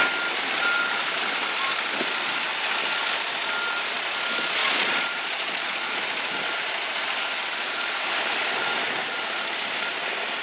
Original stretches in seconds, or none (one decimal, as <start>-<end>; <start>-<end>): 0.0-4.6; 6.0-10.4